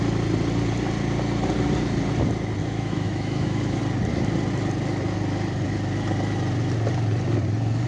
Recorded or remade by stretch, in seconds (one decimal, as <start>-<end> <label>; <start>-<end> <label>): 0.0-2.6 recorded; 2.6-3.8 remade; 3.8-7.9 recorded